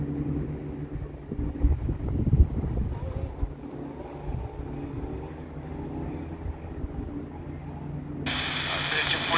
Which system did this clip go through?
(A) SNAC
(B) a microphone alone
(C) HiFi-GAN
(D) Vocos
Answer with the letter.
B